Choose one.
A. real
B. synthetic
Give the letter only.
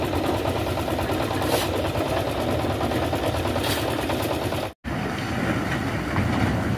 A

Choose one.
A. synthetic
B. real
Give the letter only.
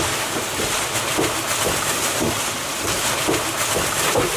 B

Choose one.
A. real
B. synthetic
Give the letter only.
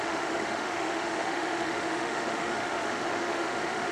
B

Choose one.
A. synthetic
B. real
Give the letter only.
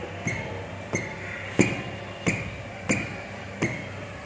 B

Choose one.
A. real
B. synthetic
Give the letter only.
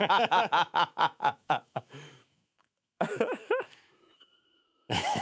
B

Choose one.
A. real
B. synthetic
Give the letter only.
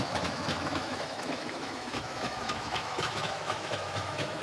B